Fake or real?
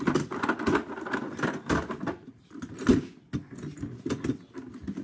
real